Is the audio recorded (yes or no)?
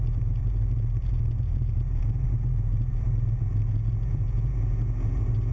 no